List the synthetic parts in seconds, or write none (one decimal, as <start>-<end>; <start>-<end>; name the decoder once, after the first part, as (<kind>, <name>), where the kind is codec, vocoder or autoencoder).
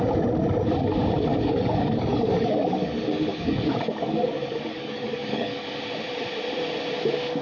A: 1.3-5.7 (codec, DAC)